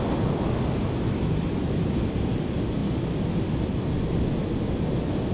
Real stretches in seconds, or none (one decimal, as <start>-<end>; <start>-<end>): 2.8-5.3